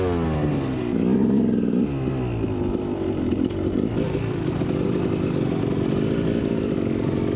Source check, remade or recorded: recorded